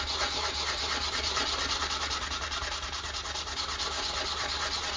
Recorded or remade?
recorded